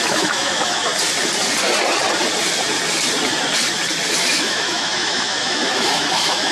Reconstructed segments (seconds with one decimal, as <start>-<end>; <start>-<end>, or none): 0.0-0.9; 4.3-6.5